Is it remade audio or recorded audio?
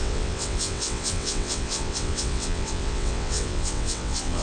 remade